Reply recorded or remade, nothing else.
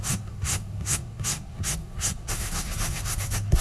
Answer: remade